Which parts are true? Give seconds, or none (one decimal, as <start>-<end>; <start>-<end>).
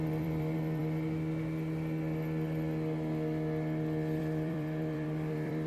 0.8-4.2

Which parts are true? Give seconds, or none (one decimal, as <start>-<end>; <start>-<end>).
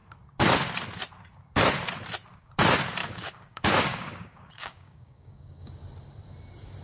0.0-3.0; 5.7-6.8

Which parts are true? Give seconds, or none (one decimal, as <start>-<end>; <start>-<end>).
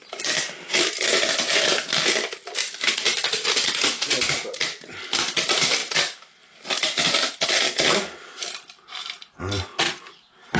none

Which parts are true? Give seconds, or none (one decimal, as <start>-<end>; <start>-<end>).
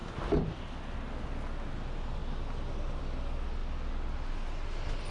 0.0-5.1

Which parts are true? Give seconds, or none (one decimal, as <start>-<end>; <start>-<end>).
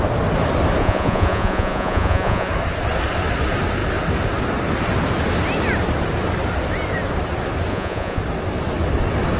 0.0-0.8; 2.5-7.7; 8.2-9.4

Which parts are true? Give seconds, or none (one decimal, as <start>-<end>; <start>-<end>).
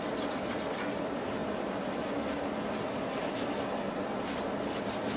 0.0-5.2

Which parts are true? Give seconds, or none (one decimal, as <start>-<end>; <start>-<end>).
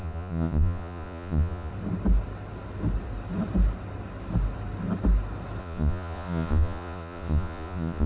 1.7-5.6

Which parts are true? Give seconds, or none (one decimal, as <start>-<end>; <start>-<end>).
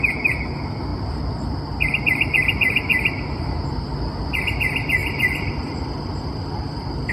0.0-5.0